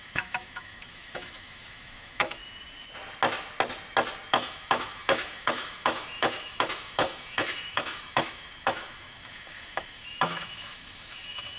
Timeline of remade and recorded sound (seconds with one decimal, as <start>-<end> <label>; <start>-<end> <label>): 0.0-2.4 remade; 2.4-4.3 recorded; 4.3-11.6 remade